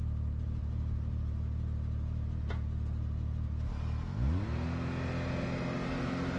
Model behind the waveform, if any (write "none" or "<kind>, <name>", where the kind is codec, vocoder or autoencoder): none